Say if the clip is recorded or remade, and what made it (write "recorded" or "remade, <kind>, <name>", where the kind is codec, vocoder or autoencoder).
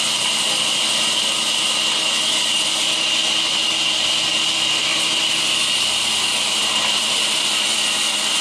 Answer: recorded